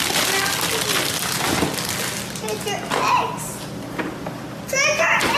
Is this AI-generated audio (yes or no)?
no